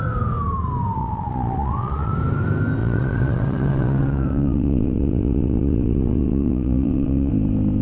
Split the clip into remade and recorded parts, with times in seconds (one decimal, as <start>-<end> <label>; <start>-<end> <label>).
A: 0.0-1.0 recorded; 1.0-2.1 remade; 2.1-2.8 recorded; 2.8-7.3 remade; 7.3-7.8 recorded